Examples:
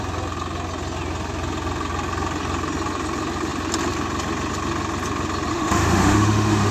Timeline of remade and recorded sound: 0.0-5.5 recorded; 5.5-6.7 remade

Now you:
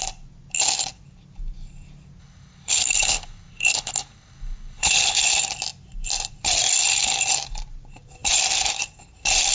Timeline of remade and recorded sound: 0.0-2.2 recorded; 2.2-5.2 remade; 5.2-9.5 recorded